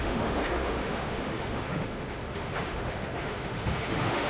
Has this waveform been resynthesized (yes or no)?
yes